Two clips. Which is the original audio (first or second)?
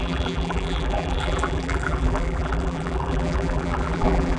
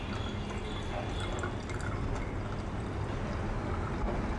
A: second